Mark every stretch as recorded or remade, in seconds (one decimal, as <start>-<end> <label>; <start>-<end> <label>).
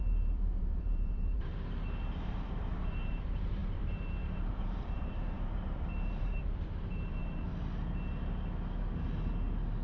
0.0-1.5 remade; 1.5-2.2 recorded; 2.2-7.5 remade; 7.5-9.8 recorded